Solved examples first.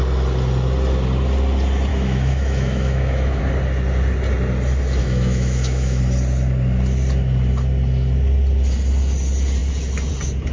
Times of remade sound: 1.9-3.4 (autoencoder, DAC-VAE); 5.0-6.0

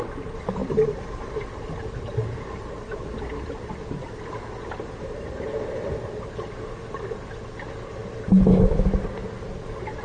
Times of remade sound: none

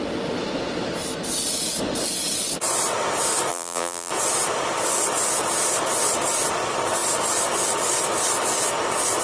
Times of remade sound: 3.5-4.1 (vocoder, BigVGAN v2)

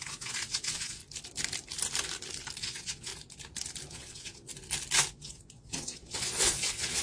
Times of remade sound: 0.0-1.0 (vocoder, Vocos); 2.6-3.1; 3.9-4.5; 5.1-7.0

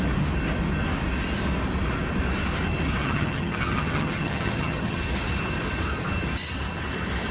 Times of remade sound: 3.0-5.0 (vocoder, HiFi-GAN)

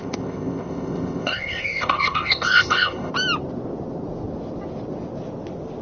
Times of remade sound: 0.0-3.1 (codec, ZipCodec)